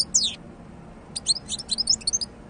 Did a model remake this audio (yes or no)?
no